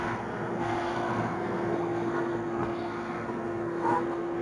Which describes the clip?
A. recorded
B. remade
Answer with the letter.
B